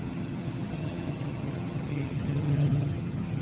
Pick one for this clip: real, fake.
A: fake